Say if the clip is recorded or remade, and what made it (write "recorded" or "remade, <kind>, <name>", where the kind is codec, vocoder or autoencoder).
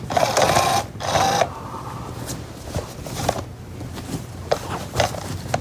recorded